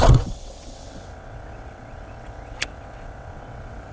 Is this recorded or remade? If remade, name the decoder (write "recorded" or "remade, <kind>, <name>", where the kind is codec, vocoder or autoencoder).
remade, vocoder, WaveNeXt